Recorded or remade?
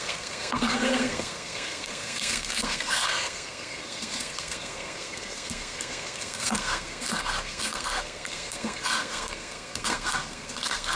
remade